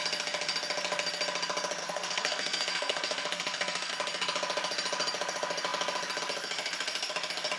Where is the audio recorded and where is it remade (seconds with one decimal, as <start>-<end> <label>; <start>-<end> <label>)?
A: 0.0-1.8 recorded; 1.8-3.9 remade; 3.9-7.6 recorded